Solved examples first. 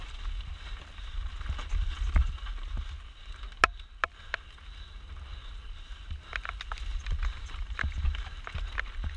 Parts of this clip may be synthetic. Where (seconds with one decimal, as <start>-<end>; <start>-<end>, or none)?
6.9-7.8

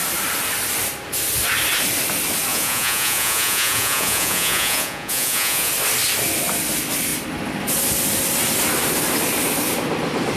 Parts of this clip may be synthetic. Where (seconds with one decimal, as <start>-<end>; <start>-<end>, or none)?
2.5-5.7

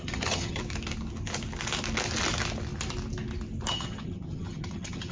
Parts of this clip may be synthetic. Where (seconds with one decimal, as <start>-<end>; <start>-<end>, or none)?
0.0-0.6; 3.7-5.1